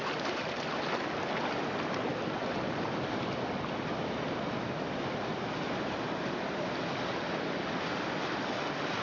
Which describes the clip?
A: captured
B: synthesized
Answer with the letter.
A